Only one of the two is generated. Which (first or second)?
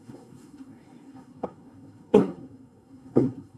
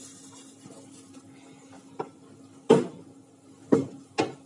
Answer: first